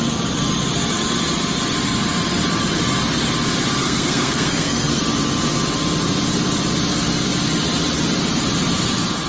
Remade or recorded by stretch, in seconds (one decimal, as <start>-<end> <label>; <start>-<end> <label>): 0.0-3.8 recorded; 3.8-5.0 remade; 5.0-9.3 recorded